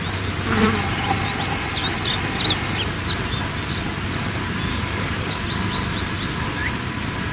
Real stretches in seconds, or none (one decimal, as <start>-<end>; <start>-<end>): 0.0-4.7; 5.4-7.3